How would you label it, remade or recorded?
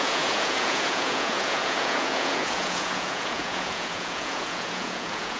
remade